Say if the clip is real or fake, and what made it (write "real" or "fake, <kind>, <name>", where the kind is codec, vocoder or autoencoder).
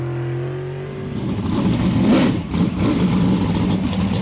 real